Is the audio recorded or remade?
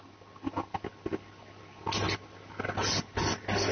recorded